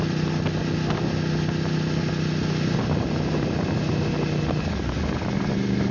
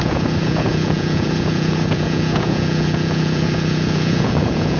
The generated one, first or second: second